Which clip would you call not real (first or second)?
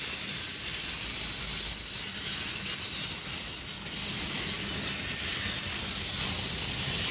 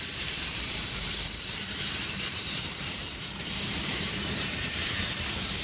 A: second